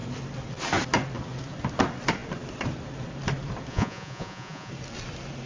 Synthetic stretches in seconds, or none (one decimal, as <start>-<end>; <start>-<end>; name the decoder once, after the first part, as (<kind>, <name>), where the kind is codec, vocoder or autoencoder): 3.7-4.7 (vocoder, Vocos)